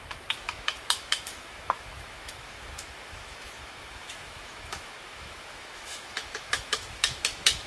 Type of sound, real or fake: fake